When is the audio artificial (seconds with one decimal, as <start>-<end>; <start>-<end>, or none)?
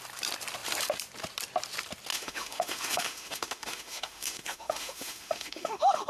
2.1-6.1